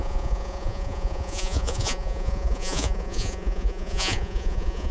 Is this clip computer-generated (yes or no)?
yes